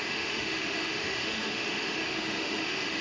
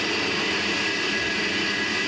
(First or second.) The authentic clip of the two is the second